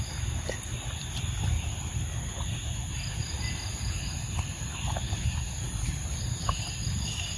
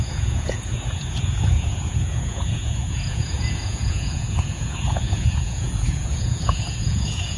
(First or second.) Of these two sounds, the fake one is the second